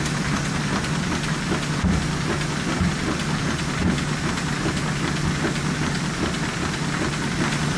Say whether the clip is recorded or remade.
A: recorded